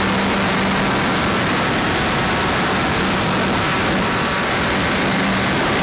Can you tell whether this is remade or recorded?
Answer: recorded